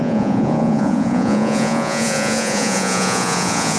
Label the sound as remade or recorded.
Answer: remade